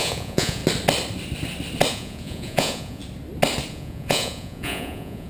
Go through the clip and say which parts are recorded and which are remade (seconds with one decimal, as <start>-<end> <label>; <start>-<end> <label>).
0.0-0.6 remade; 0.6-1.9 recorded; 1.9-3.0 remade; 3.0-3.7 recorded; 3.7-5.3 remade